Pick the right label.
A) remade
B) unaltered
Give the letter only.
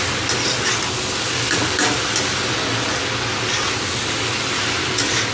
B